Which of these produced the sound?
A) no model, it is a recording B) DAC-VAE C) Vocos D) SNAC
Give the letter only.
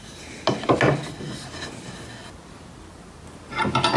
A